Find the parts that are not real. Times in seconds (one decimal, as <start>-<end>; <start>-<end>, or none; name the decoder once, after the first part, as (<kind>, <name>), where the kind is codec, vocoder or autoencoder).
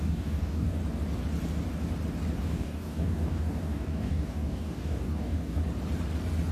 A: 0.0-0.8 (codec, DAC); 2.4-5.6